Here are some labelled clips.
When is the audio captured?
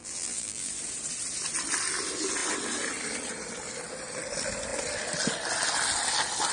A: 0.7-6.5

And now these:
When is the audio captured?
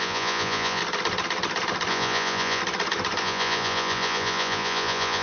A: 0.8-1.9; 2.6-3.2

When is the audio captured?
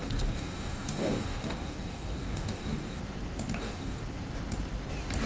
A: 3.0-3.6; 4.0-5.3